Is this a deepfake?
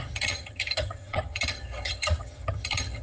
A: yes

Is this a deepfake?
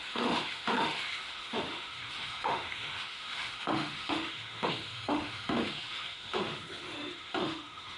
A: yes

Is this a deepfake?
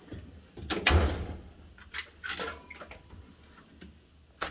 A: no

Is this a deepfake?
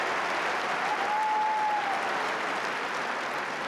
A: no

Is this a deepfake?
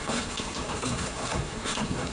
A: yes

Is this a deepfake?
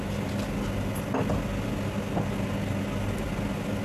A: no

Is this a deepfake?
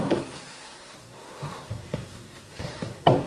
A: yes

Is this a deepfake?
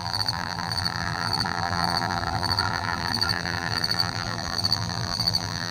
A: yes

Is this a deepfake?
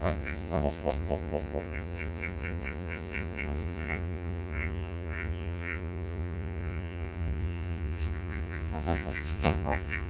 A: yes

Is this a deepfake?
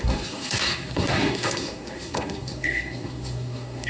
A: yes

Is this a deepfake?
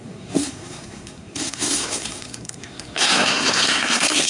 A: yes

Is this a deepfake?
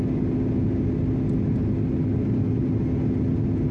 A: no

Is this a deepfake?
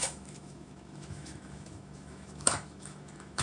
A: yes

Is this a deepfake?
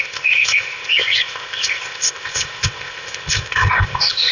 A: yes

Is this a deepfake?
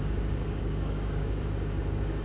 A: yes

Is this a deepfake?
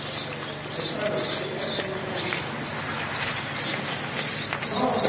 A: no